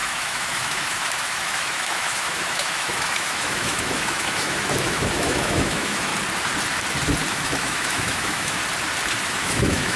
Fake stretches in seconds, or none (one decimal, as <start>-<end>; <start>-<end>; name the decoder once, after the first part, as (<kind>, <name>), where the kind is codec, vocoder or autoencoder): 0.0-6.1 (autoencoder, DAC-VAE); 7.3-8.6; 9.2-10.0